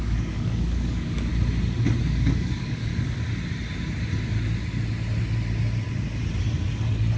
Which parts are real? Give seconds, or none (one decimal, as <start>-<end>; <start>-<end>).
1.3-2.0; 2.9-7.2